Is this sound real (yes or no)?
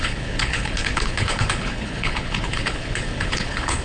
no